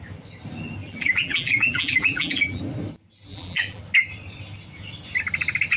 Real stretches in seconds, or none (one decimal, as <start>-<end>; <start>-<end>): 0.0-0.8; 2.6-3.3; 3.8-5.8